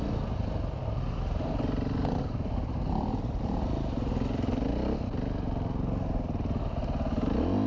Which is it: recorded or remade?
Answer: recorded